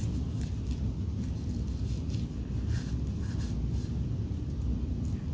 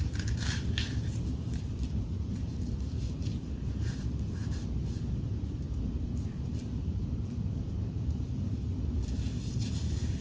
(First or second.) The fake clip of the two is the second